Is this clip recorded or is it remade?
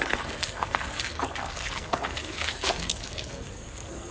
remade